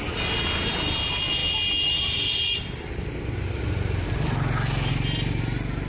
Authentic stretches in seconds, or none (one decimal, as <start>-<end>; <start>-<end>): 0.0-5.9